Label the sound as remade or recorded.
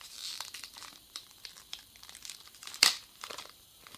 remade